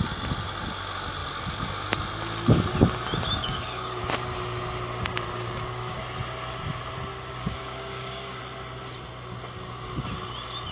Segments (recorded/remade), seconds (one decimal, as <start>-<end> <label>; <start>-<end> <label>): 0.0-3.4 recorded; 3.4-4.0 remade; 4.0-5.3 recorded; 5.3-6.0 remade; 6.0-7.1 recorded; 7.1-8.4 remade; 8.4-10.7 recorded